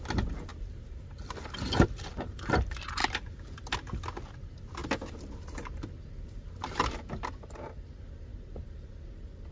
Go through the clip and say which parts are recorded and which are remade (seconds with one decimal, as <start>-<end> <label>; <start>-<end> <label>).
0.0-0.5 recorded; 0.5-2.5 remade; 2.5-3.0 recorded; 3.0-3.6 remade; 3.6-4.8 recorded; 4.8-6.8 remade; 6.8-8.3 recorded; 8.3-9.0 remade; 9.0-9.5 recorded